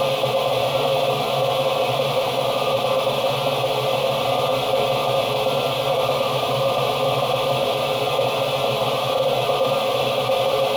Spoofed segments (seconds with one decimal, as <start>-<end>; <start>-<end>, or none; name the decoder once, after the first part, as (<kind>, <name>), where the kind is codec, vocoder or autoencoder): none